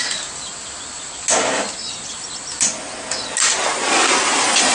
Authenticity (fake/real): real